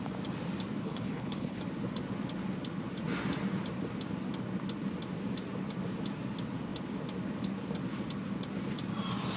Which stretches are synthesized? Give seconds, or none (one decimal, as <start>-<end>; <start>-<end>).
0.8-1.6